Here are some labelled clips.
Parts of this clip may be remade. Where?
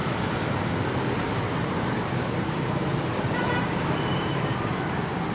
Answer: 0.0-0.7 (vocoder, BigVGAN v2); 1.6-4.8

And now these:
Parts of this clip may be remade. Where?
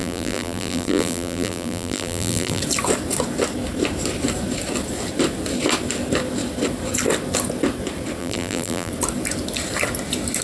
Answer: 0.0-2.6 (vocoder, BigVGAN v2); 8.2-8.9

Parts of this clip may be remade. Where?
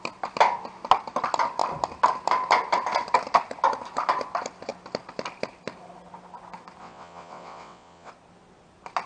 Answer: 6.8-8.1 (vocoder, WaveNeXt)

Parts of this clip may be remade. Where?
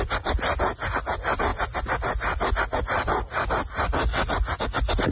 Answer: none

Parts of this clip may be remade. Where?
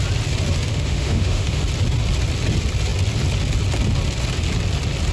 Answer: 0.7-1.6 (autoencoder, DAC-VAE)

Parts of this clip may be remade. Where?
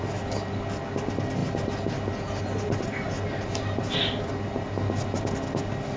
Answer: none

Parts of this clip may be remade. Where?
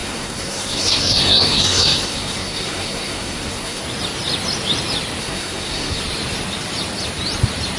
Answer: 0.0-3.8 (codec, SNAC); 5.2-6.0